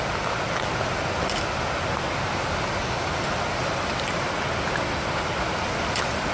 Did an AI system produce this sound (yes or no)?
no